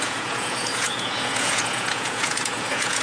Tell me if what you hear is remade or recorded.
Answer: remade